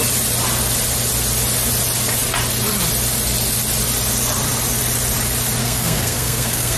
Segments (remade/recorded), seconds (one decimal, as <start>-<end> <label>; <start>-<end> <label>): 0.0-5.6 recorded; 5.6-6.8 remade